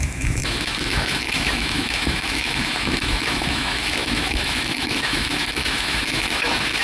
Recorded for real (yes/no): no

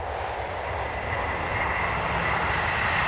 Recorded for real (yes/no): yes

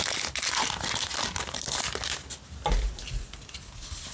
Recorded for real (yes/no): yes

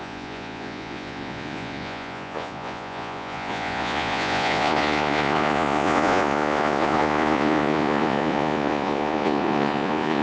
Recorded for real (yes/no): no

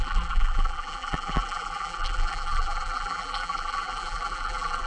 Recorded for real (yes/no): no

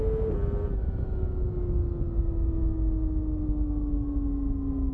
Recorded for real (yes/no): yes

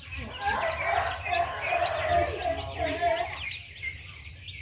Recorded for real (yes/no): yes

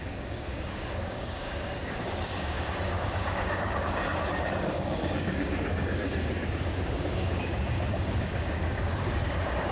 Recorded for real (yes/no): no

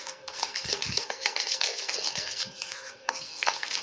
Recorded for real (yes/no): no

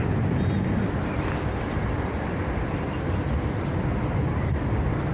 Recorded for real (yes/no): yes